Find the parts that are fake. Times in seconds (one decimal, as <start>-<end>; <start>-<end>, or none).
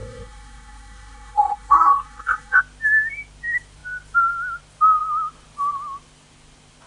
0.0-2.6